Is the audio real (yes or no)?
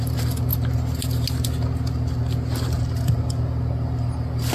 yes